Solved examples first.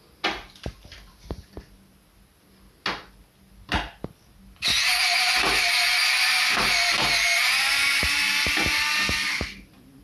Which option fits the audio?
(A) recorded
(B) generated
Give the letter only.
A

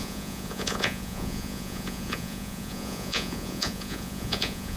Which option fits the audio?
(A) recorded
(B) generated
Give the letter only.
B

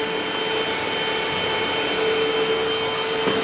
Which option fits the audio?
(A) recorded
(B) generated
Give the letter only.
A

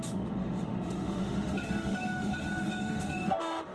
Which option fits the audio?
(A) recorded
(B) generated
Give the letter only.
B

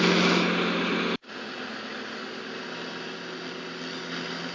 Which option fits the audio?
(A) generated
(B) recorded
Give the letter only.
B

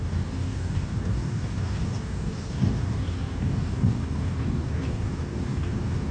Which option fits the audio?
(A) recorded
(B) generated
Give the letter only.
B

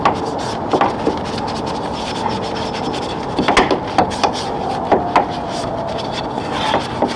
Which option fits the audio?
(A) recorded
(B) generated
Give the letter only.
A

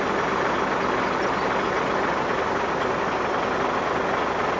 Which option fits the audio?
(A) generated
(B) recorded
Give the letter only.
B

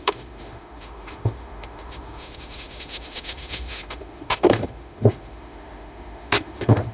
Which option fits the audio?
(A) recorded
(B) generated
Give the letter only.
B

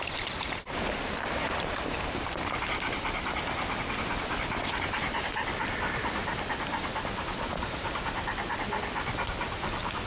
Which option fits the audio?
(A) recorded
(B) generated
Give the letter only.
A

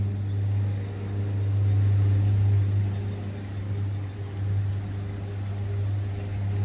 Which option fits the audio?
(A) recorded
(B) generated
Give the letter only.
A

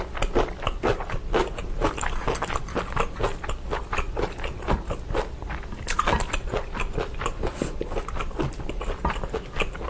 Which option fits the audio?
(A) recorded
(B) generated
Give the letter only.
A